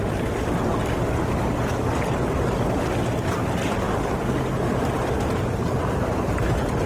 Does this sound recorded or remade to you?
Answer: recorded